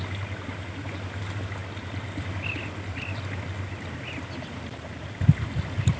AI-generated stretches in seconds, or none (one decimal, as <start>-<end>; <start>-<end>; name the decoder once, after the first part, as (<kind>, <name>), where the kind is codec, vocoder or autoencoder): none